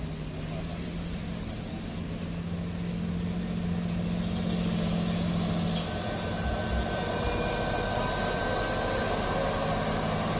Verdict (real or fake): real